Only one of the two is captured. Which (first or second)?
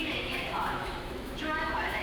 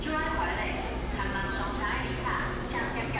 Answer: second